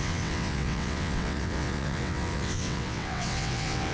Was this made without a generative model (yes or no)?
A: no